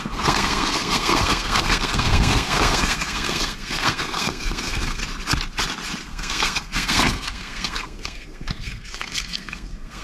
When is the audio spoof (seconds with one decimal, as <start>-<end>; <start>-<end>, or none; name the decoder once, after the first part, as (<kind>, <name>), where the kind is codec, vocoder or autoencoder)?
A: 0.0-5.0 (codec, SNAC); 6.0-10.0